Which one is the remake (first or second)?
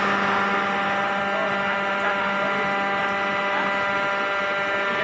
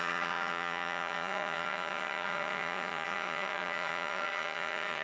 second